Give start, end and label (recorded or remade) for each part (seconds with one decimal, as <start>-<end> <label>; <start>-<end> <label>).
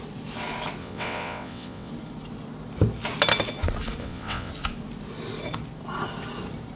0.0-0.8 recorded; 0.8-1.9 remade; 1.9-4.0 recorded; 4.0-4.5 remade; 4.5-6.8 recorded